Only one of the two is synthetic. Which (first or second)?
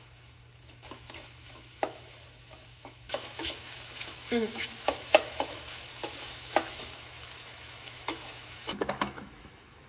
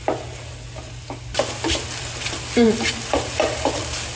first